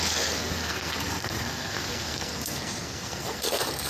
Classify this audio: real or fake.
fake